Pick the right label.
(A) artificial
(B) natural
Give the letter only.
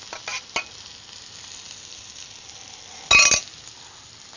B